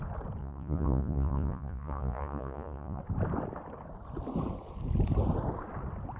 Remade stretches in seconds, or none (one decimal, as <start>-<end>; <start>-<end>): 0.4-3.0